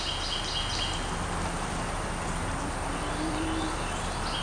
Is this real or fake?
real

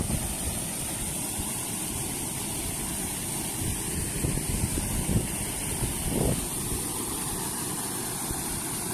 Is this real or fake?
fake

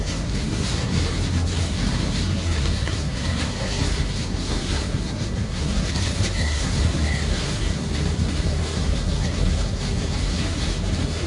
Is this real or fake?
fake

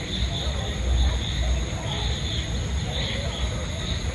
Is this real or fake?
real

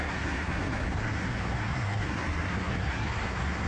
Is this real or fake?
fake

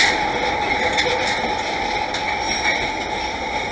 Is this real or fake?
real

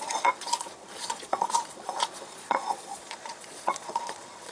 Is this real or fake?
fake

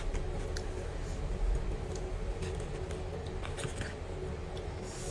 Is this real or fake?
real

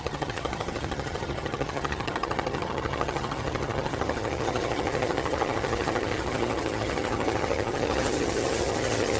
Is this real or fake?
fake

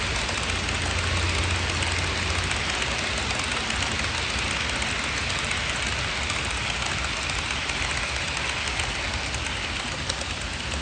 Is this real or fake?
real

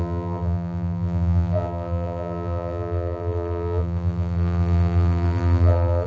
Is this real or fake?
fake